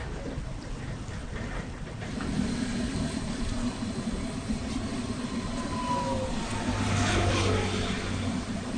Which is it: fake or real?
real